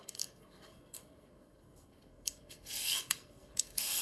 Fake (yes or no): yes